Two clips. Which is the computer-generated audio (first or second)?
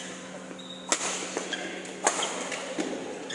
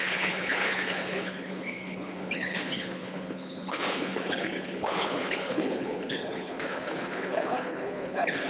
second